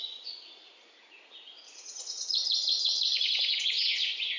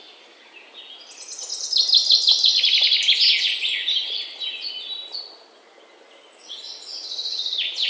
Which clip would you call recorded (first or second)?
second